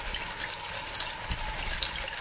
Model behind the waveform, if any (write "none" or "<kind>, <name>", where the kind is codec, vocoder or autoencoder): none